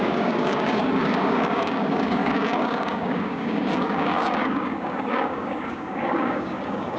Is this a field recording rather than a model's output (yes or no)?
no